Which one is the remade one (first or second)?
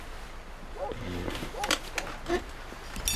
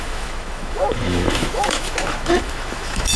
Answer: second